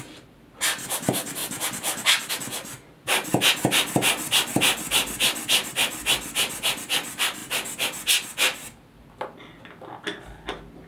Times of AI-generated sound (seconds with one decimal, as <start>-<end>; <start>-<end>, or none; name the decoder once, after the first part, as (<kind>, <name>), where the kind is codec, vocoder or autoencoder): 1.4-2.3 (vocoder, BigVGAN v2)